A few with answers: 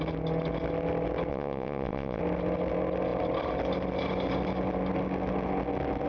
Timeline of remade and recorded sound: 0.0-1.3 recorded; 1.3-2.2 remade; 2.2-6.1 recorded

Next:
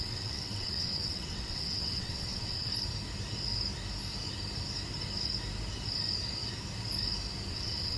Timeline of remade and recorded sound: 0.0-2.7 remade; 2.7-7.5 recorded; 7.5-8.0 remade

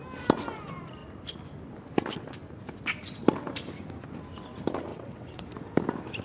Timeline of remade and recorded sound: 0.0-4.9 recorded; 4.9-5.4 remade; 5.4-6.2 recorded

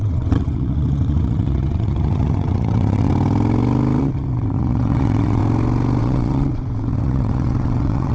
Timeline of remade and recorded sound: 0.0-3.1 remade; 3.1-4.0 recorded; 4.0-5.4 remade; 5.4-6.0 recorded; 6.0-8.1 remade